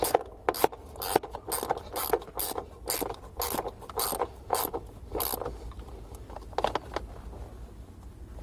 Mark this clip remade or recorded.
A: recorded